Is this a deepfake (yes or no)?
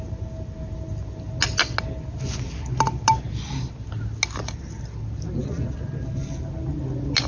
no